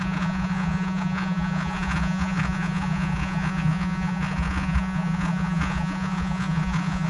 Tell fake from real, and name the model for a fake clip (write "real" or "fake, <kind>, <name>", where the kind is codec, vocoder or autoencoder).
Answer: fake, vocoder, Vocos